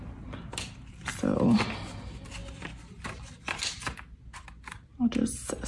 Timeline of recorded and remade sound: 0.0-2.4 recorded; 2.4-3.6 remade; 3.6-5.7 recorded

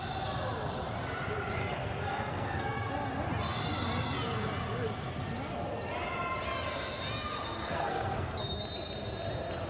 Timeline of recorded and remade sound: 0.0-1.6 recorded; 1.6-2.9 remade; 2.9-7.6 recorded; 7.6-8.4 remade; 8.4-9.7 recorded

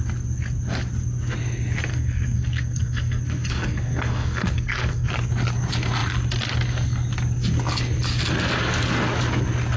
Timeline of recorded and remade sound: 0.0-1.9 recorded; 1.9-5.1 remade; 5.1-9.8 recorded

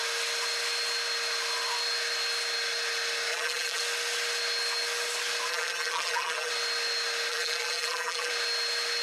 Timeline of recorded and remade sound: 0.0-3.3 recorded; 3.3-3.8 remade; 3.8-5.5 recorded; 5.5-6.5 remade; 6.5-7.3 recorded; 7.3-8.3 remade; 8.3-9.0 recorded

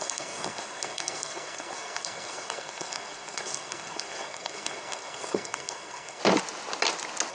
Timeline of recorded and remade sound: 0.0-6.2 remade; 6.2-7.3 recorded

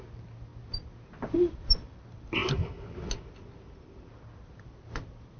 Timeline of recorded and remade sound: 0.0-5.4 recorded

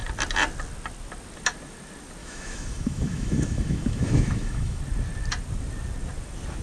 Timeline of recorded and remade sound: 0.0-2.2 recorded; 2.2-4.8 remade; 4.8-6.6 recorded